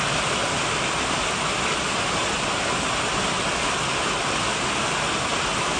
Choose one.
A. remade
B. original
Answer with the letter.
B